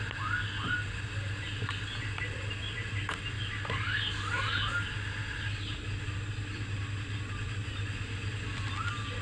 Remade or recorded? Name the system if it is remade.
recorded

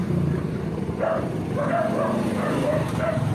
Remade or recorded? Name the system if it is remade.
recorded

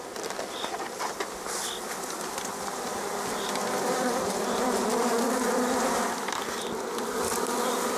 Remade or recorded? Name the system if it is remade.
recorded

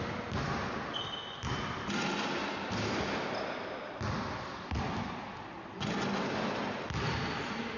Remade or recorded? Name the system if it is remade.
recorded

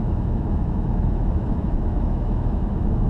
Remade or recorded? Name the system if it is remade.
remade, autoencoder, DAC-VAE